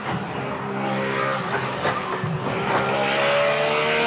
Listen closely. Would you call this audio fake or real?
real